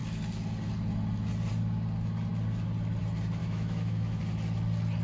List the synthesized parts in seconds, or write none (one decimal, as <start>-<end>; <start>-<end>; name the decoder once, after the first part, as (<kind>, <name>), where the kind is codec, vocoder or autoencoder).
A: 3.4-4.2 (autoencoder, DAC-VAE)